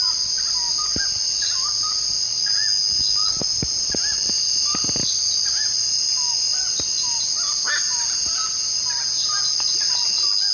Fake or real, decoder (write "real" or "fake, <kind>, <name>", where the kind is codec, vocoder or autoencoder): real